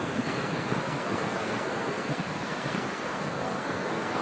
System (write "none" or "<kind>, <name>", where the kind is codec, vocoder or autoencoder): codec, SNAC